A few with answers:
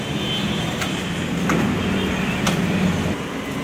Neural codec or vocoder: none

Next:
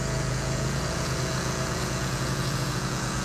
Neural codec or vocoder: vocoder, Vocos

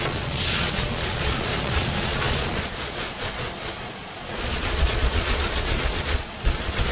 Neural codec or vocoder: vocoder, Vocos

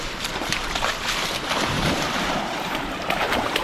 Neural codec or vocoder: vocoder, BigVGAN v2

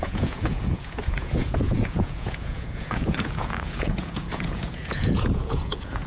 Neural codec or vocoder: vocoder, Vocos